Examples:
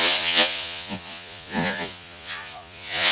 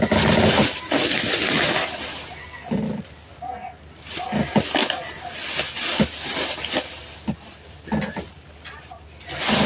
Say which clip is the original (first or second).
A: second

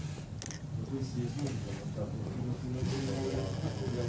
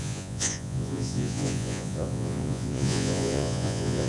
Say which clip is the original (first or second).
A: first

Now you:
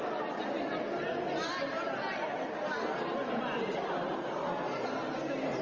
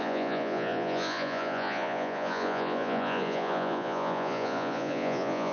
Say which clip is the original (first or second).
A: first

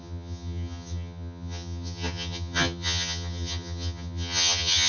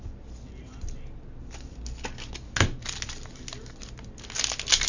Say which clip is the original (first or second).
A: second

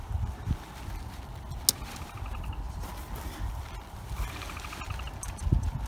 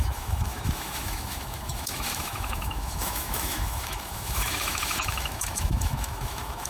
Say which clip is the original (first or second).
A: first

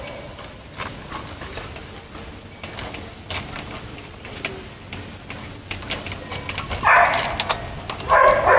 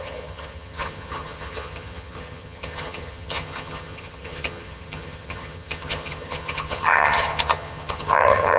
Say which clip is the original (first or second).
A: first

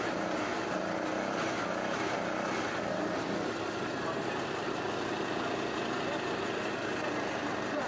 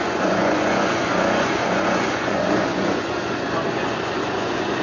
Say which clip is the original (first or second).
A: first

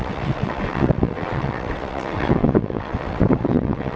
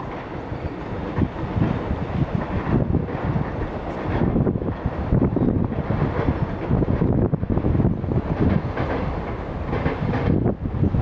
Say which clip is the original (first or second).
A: second